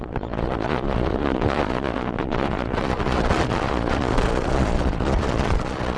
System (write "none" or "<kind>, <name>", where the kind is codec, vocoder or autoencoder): vocoder, Vocos